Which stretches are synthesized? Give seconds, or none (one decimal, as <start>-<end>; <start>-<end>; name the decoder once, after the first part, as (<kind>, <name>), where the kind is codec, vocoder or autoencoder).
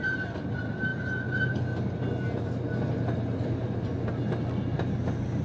none